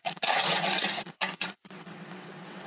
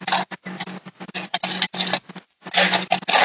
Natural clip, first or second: second